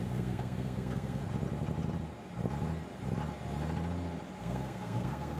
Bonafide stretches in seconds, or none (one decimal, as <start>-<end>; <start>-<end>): 1.2-4.4

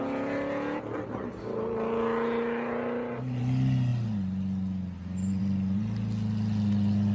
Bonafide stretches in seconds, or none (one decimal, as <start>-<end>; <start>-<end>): 0.0-7.1

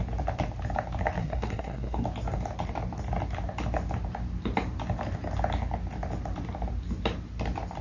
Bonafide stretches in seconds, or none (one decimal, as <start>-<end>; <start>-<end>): 0.0-1.2; 2.0-7.8